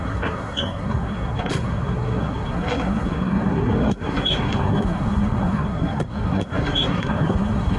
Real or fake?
fake